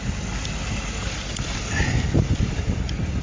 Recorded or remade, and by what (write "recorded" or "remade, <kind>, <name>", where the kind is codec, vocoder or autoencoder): recorded